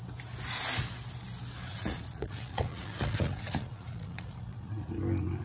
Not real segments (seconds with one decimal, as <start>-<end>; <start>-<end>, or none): 1.7-4.9